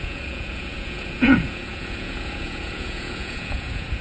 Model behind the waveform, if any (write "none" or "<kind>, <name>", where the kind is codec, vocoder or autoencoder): vocoder, Vocos